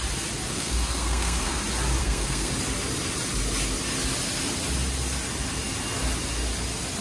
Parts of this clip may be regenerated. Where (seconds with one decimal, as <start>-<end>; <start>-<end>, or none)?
0.5-1.6; 2.0-2.5